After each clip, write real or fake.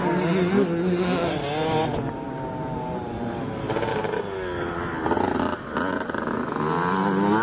real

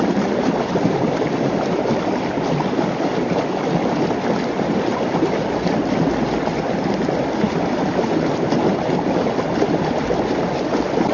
real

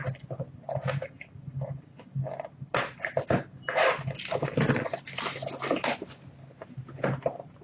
real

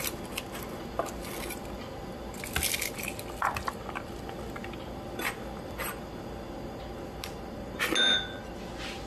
real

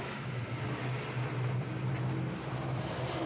real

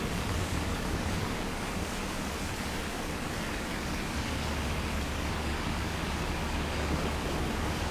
fake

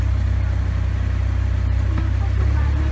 real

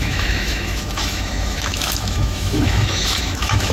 fake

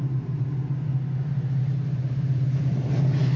fake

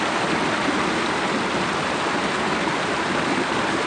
real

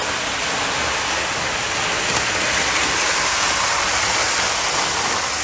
real